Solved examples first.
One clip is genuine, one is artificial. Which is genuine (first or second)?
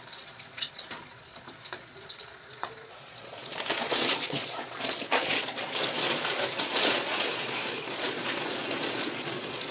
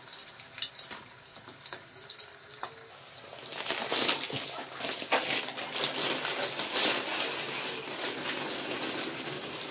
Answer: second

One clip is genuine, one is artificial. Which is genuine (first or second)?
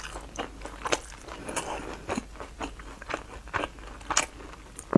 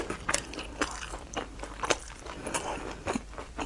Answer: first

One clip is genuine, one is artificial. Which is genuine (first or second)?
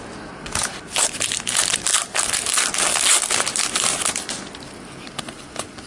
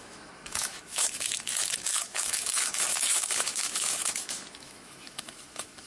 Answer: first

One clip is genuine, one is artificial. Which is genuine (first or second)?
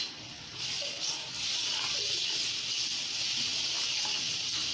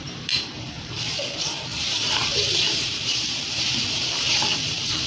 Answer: first